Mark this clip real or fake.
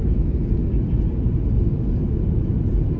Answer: real